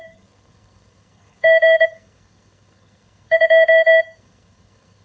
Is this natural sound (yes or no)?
no